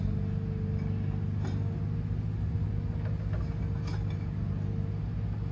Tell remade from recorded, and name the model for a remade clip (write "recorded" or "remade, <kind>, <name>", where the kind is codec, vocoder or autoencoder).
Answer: recorded